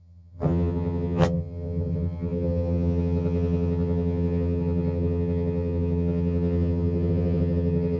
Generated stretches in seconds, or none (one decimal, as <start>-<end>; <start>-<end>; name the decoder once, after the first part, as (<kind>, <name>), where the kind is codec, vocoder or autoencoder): 0.0-8.0 (vocoder, HiFi-GAN)